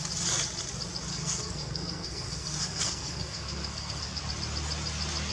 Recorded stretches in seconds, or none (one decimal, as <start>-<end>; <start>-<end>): 0.0-1.1; 4.2-5.3